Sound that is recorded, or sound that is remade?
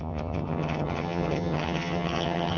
remade